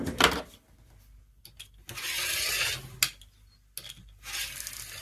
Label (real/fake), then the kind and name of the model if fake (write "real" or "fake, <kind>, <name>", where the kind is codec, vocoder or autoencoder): real